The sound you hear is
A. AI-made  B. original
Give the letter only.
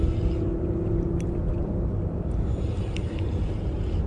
B